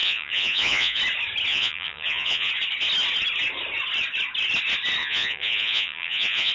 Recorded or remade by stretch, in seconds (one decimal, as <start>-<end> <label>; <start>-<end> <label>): 0.0-1.0 remade; 1.0-1.5 recorded; 1.5-2.5 remade; 2.5-5.0 recorded; 5.0-6.5 remade